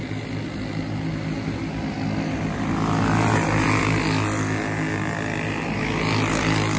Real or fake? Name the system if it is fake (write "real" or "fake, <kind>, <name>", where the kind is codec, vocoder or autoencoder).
real